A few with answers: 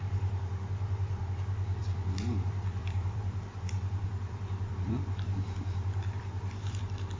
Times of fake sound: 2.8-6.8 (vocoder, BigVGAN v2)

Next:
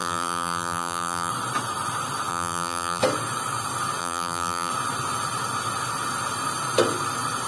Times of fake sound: 0.0-1.3 (vocoder, BigVGAN v2); 2.3-3.0; 4.0-4.7

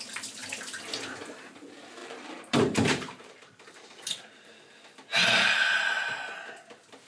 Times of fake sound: 2.0-4.5 (vocoder, BigVGAN v2)

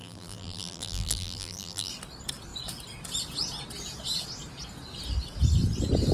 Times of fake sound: 0.0-1.9 (vocoder, BigVGAN v2)

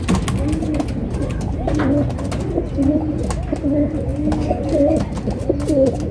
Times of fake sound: 1.0-1.8 (vocoder, BigVGAN v2)